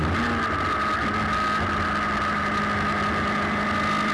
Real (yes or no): yes